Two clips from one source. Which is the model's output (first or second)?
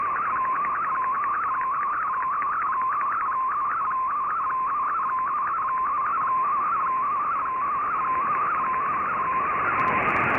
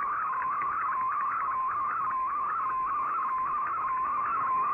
second